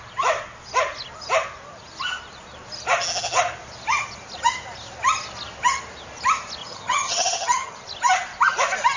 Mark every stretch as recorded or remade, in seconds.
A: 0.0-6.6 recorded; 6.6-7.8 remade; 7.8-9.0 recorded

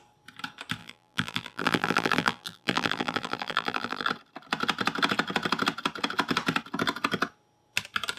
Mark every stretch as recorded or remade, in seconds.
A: 0.0-0.8 recorded; 0.8-4.1 remade; 4.1-8.2 recorded